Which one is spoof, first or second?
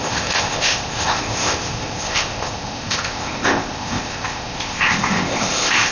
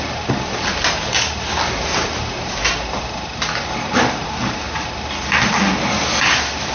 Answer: first